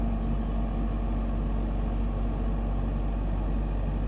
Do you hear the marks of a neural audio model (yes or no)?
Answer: no